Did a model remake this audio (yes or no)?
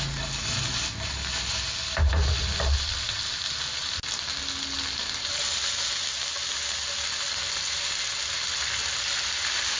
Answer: no